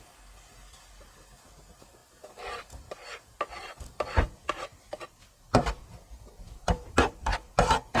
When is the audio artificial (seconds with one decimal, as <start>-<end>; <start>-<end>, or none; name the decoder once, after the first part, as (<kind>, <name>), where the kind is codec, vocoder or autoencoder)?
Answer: none